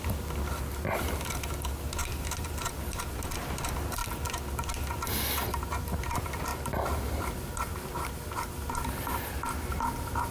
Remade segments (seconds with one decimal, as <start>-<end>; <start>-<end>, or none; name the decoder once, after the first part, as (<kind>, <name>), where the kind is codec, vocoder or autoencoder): 0.0-4.0 (vocoder, BigVGAN v2); 6.0-6.5; 7.2-10.3